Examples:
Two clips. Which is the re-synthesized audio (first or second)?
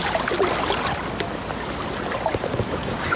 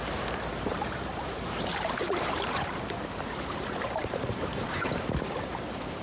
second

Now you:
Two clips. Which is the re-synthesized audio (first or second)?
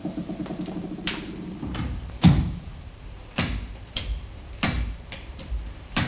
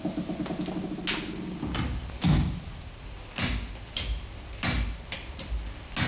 first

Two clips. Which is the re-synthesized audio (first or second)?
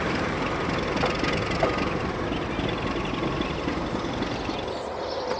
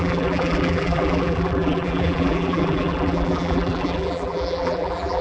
second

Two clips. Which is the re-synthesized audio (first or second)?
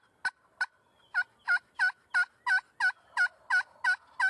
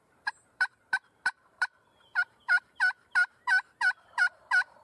second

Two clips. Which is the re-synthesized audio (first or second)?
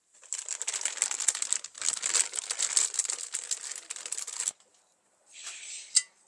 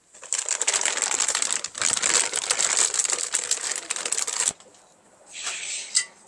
second